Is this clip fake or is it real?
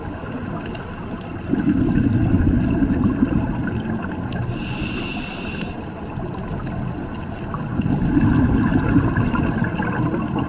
real